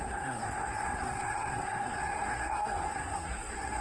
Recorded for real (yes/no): no